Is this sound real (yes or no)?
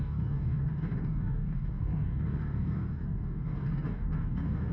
no